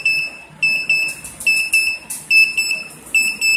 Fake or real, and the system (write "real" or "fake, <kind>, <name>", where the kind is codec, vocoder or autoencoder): real